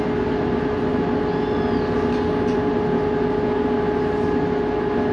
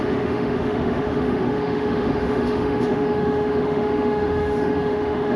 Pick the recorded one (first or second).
first